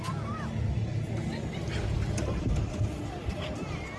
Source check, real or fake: real